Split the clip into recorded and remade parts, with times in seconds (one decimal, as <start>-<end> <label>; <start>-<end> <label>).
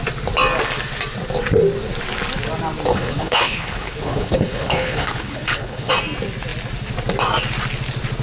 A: 0.0-2.9 recorded; 2.9-5.9 remade; 5.9-8.2 recorded